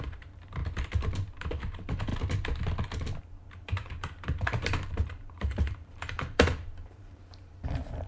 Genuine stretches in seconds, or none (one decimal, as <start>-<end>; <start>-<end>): 0.6-1.4; 2.1-3.2